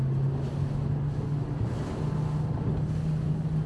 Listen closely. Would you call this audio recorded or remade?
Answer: recorded